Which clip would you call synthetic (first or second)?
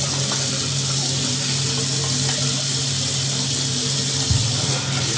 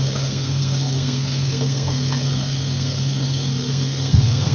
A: second